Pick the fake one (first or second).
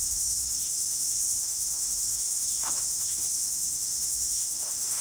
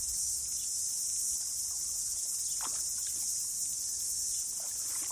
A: first